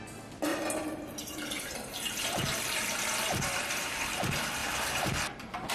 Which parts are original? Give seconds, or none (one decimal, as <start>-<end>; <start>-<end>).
0.0-0.5; 3.9-4.6